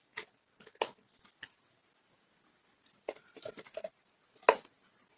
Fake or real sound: real